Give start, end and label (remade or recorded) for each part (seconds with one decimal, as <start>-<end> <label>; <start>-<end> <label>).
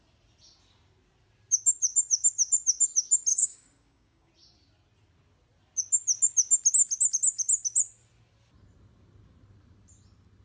0.0-3.3 recorded; 3.3-4.3 remade; 4.3-10.4 recorded